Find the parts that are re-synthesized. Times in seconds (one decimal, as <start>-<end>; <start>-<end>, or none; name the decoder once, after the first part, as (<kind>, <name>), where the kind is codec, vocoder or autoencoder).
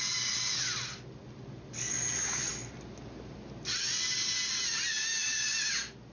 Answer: none